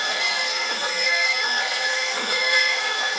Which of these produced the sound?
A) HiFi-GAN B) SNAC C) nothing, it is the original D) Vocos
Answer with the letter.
B